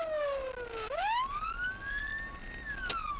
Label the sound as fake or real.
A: real